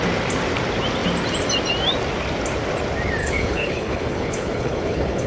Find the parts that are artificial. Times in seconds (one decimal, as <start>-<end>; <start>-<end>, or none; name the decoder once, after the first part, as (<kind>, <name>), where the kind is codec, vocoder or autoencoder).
3.2-5.3 (codec, HILCodec)